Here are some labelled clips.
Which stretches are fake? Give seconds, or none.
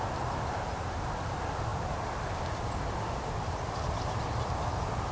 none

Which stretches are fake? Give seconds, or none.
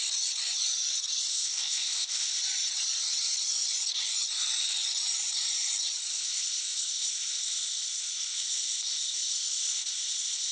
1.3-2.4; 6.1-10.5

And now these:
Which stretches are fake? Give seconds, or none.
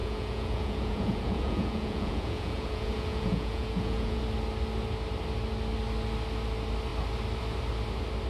0.0-4.2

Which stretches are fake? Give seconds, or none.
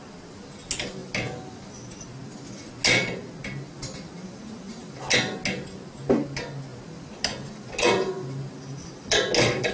none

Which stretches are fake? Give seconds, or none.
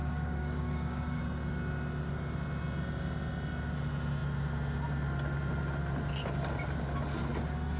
0.0-1.2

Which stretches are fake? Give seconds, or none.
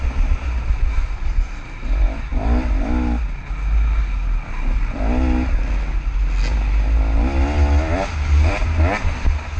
none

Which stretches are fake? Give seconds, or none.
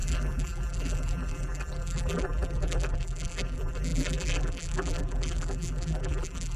0.0-6.6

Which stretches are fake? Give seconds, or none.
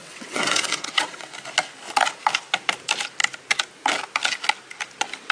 0.0-1.3